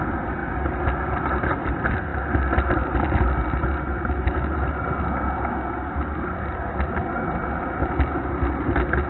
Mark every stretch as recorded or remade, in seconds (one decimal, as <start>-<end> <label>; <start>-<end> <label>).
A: 0.0-9.1 recorded